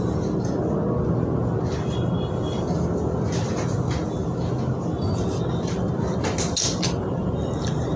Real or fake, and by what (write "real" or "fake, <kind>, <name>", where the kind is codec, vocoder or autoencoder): real